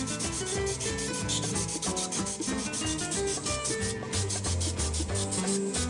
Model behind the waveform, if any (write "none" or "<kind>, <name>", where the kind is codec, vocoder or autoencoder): none